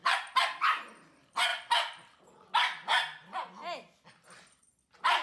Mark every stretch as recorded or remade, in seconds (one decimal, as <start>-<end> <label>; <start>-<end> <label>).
0.0-5.2 recorded